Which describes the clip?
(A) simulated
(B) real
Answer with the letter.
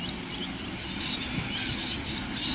B